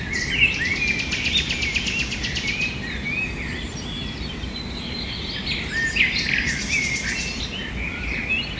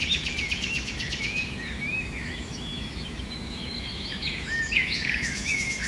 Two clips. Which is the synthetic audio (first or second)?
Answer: second